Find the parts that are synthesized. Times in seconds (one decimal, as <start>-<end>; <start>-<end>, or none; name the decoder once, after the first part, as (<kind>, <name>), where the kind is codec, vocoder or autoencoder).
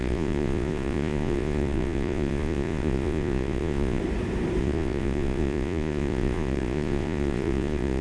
0.0-4.0 (vocoder, Vocos); 4.6-8.0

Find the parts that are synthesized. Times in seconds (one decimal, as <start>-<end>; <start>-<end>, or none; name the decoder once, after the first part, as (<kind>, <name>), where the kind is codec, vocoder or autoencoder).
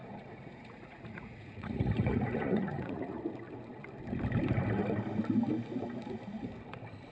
0.0-3.2 (vocoder, Vocos)